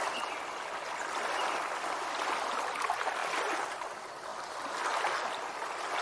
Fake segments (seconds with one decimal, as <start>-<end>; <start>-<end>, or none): none